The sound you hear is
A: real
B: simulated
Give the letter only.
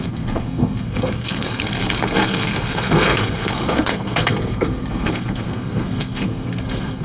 B